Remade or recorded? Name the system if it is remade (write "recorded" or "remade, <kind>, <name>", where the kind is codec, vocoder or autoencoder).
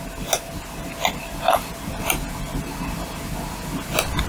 recorded